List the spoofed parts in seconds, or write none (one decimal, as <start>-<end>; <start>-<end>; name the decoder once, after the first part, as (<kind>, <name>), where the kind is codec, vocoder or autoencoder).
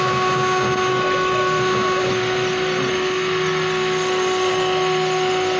0.9-1.6 (codec, SNAC); 2.1-5.6